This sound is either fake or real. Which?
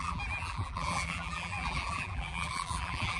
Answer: fake